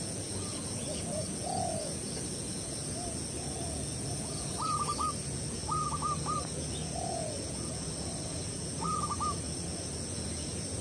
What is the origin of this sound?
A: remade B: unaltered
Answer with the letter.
A